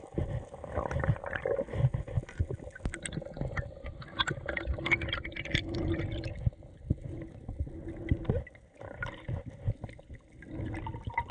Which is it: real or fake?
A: real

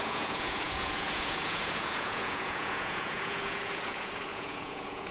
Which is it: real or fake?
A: fake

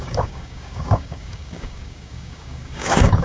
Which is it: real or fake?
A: fake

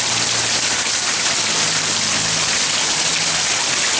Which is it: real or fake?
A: real